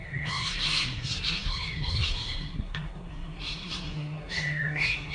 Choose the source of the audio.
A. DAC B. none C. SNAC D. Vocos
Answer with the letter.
C